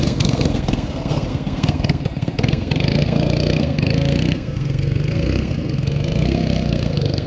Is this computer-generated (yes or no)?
yes